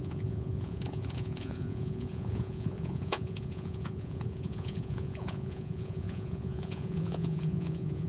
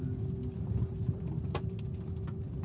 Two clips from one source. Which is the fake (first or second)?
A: first